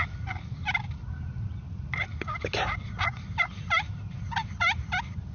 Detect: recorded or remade recorded